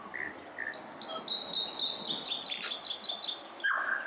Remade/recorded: recorded